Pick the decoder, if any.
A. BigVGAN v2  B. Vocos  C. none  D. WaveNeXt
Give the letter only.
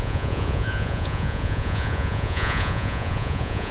B